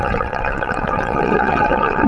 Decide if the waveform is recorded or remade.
remade